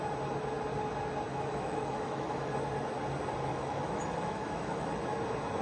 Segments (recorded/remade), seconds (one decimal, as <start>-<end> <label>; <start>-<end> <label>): 0.0-1.3 recorded; 1.3-2.5 remade; 2.5-3.5 recorded; 3.5-5.0 remade; 5.0-5.6 recorded